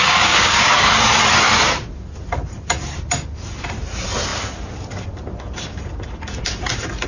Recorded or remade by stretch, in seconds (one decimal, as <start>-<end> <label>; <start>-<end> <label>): 0.0-0.7 remade; 0.7-7.1 recorded

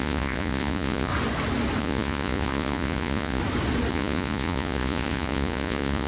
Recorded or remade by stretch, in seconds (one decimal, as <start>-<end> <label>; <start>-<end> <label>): 0.0-1.1 remade; 1.1-1.8 recorded; 1.8-3.4 remade; 3.4-3.9 recorded; 3.9-6.1 remade

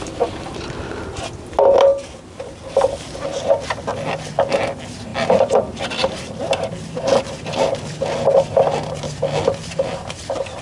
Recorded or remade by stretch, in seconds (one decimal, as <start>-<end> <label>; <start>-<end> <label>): 0.0-1.9 recorded; 1.9-3.6 remade; 3.6-10.6 recorded